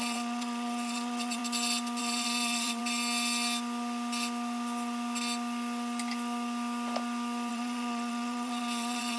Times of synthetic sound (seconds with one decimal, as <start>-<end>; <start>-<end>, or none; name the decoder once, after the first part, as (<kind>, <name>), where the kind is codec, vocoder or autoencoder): 0.0-1.4 (vocoder, WaveNeXt); 2.0-2.8; 7.5-9.2